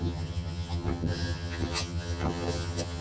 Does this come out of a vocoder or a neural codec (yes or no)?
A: yes